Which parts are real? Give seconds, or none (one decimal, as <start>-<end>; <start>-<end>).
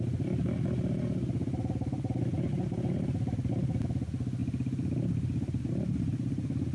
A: 0.0-2.5; 3.9-4.4; 5.6-6.7